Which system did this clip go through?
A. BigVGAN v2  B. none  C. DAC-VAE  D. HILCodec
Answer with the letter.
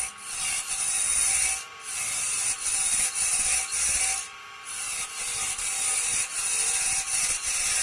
B